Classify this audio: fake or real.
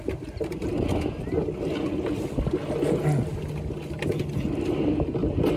real